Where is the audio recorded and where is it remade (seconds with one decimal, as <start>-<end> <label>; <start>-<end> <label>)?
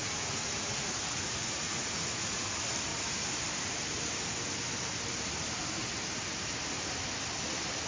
0.0-2.5 remade; 2.5-7.9 recorded